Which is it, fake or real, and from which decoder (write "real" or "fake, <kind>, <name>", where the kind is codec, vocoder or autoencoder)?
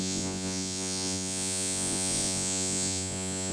fake, vocoder, Vocos